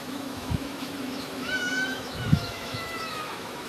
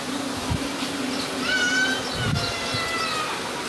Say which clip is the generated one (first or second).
first